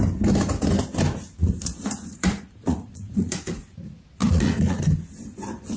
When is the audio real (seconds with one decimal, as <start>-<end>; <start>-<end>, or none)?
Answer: 0.0-1.4; 3.6-4.2; 4.8-5.8